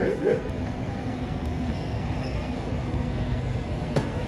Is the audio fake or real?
fake